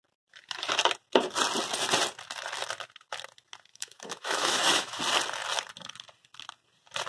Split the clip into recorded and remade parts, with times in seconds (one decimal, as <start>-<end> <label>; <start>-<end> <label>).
0.0-3.7 recorded; 3.7-5.0 remade; 5.0-7.1 recorded